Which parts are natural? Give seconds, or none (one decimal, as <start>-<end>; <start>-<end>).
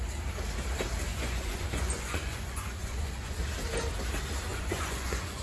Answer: 0.0-1.1; 3.4-4.5